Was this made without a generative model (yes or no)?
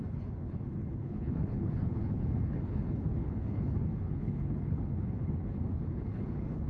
no